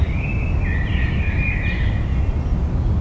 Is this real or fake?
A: real